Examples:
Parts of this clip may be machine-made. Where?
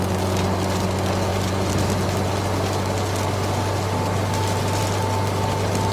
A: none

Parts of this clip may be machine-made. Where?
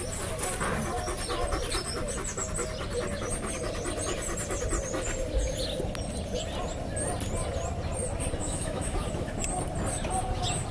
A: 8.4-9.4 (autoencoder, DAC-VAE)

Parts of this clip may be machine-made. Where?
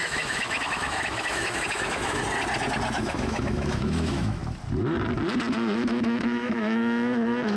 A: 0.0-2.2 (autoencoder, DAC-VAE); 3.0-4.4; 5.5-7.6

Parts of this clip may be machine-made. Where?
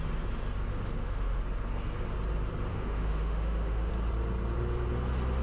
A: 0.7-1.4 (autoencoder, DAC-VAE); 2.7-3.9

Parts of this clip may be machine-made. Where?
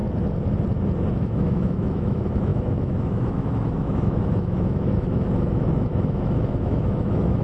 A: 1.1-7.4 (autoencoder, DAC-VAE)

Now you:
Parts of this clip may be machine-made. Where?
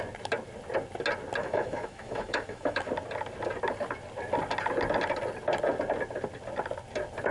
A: 1.4-2.9 (autoencoder, DAC-VAE)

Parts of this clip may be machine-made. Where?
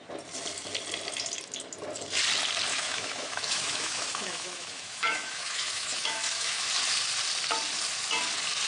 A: 2.7-6.7 (autoencoder, DAC-VAE)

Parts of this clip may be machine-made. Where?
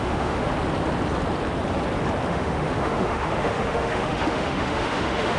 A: 0.0-0.5 (autoencoder, DAC-VAE); 2.3-5.4